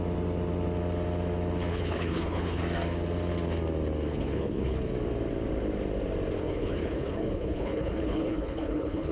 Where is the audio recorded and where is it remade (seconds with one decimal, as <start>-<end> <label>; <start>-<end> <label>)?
0.0-1.7 recorded; 1.7-2.6 remade; 2.6-4.1 recorded; 4.1-4.9 remade; 4.9-6.4 recorded; 6.4-9.1 remade